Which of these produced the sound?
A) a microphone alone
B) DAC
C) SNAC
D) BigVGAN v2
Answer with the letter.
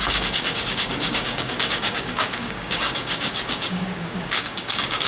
B